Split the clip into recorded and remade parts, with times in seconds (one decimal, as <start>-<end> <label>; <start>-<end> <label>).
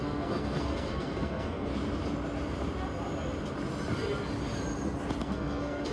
0.0-1.7 remade; 1.7-5.2 recorded; 5.2-5.9 remade